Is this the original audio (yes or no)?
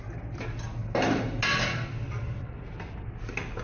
yes